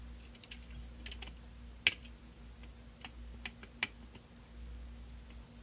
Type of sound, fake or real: real